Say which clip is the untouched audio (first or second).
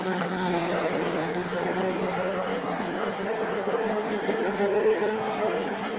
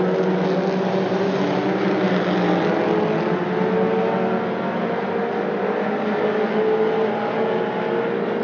second